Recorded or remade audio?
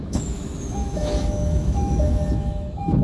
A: remade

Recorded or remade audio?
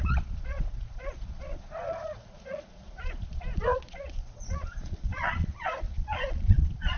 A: remade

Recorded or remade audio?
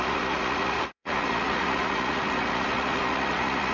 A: remade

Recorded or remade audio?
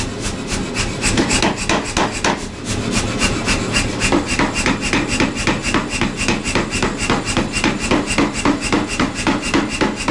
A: recorded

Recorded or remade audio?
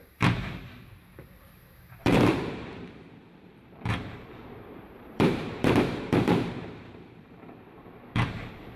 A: remade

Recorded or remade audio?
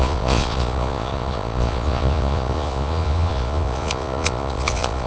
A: remade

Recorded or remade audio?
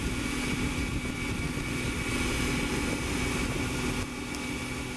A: recorded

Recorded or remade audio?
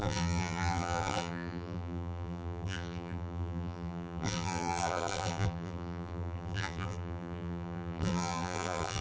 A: remade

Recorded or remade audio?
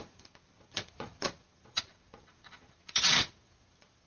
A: remade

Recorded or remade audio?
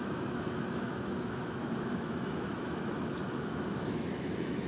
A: remade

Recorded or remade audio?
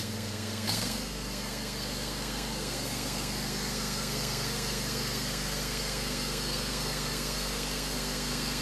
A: remade